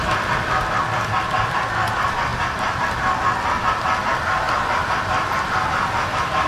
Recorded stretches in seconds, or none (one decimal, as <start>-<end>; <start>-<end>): 0.0-6.5